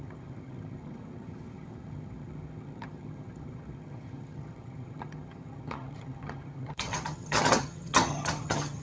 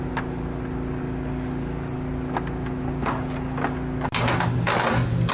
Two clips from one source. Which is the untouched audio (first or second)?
second